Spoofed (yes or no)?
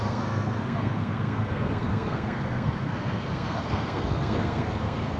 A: yes